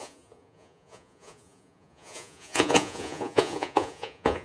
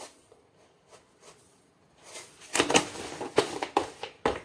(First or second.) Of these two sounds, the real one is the second